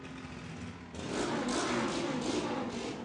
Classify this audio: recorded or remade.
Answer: recorded